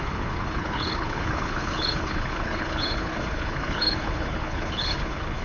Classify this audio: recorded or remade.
remade